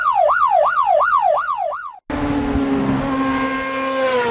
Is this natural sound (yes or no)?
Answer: yes